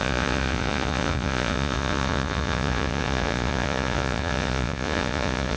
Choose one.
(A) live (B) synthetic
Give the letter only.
B